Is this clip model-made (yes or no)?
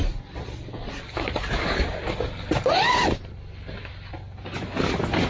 no